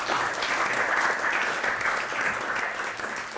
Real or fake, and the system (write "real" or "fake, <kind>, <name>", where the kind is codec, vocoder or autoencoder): real